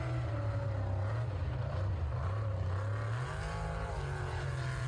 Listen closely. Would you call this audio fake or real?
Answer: real